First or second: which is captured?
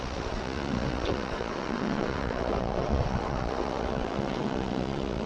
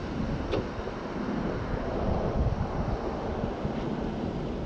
second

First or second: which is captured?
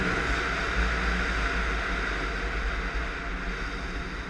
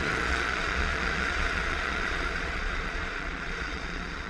first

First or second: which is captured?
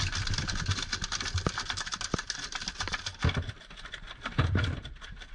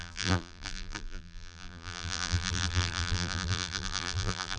first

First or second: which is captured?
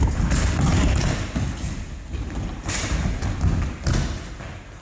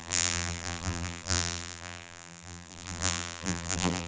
first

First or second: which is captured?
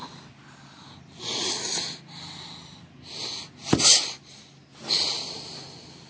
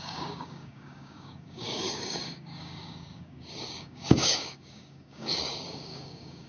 first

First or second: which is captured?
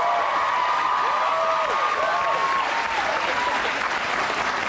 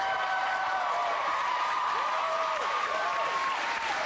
first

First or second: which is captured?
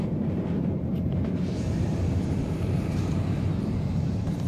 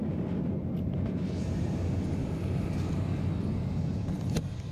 second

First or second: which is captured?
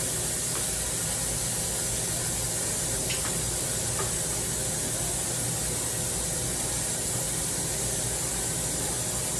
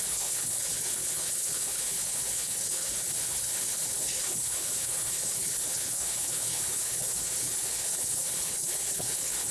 first